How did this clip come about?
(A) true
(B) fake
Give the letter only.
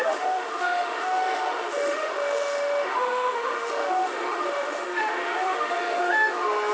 B